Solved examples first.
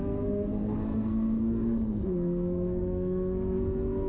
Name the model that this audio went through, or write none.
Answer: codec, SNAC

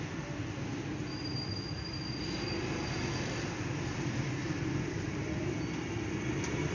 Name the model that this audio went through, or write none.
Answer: none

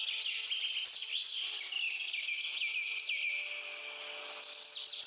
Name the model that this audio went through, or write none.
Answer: none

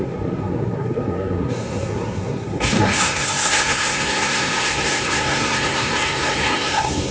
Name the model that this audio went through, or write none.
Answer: codec, SNAC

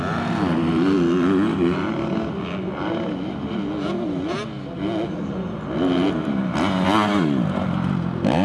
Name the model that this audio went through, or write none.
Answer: none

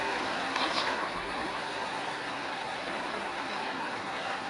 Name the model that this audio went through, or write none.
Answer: codec, SNAC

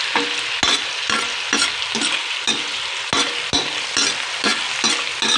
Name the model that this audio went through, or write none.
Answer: none